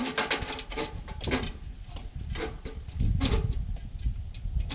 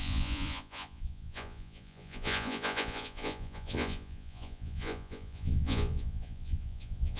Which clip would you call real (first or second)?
first